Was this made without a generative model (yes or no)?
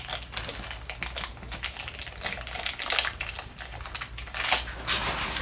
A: yes